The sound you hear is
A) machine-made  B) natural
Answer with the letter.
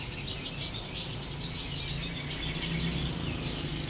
B